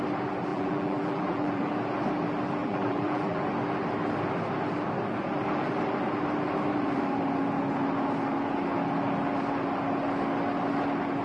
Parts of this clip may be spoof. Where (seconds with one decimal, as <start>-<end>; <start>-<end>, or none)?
0.5-1.7; 2.6-3.4